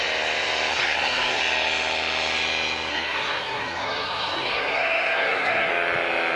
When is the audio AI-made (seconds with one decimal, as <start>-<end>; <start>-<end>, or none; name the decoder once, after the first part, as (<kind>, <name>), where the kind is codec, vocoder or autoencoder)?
0.7-1.4 (codec, SNAC); 2.9-5.7